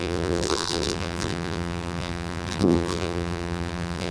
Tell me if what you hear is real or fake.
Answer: fake